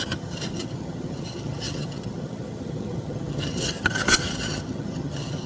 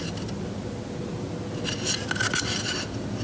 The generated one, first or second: first